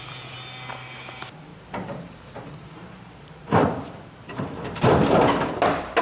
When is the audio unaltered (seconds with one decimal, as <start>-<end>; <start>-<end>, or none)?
0.0-1.5; 4.8-6.0